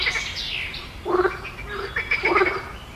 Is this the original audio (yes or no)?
yes